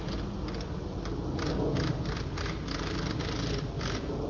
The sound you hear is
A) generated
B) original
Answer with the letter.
B